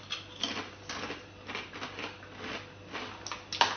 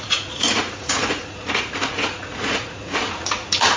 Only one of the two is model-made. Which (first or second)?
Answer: second